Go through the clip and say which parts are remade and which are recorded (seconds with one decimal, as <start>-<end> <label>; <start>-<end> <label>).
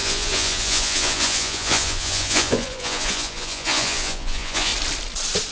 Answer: 0.0-4.7 remade; 4.7-5.5 recorded